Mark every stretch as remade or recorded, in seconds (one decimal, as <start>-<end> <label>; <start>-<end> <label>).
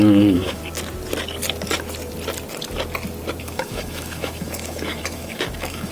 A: 0.0-0.6 remade; 0.6-3.4 recorded; 3.4-5.9 remade